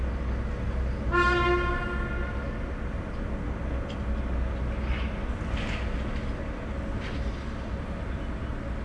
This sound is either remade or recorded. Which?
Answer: recorded